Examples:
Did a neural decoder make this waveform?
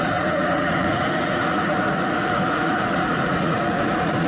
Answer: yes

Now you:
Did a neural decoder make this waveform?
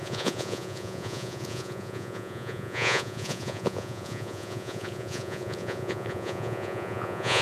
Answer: yes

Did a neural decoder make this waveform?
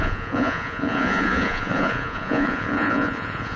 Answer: yes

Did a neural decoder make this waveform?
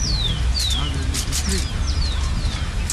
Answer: no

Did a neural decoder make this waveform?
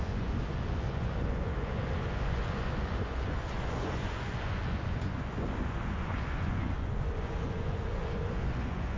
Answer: yes